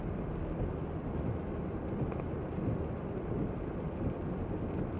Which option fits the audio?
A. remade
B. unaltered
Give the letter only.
B